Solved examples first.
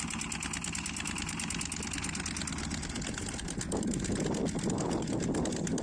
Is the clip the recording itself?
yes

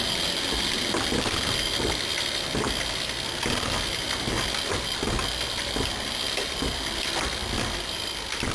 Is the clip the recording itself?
yes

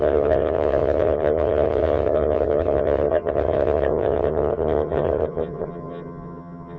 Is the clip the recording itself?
no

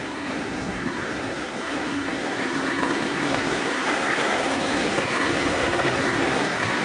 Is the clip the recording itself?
no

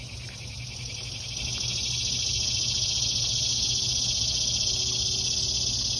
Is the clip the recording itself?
yes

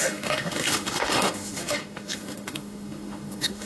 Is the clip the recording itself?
no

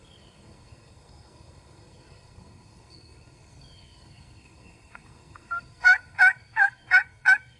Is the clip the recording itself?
no